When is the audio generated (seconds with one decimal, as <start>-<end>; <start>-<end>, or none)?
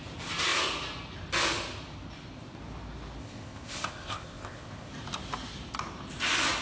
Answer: 3.2-4.9